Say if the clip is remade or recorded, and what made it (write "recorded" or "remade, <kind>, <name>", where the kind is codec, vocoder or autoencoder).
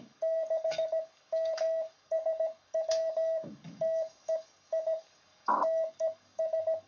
remade, codec, DAC